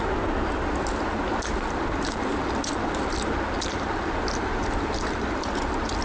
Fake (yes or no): no